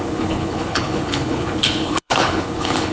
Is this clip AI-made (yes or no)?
yes